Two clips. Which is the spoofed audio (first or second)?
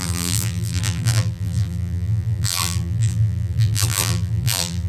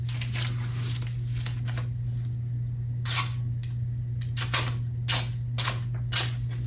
first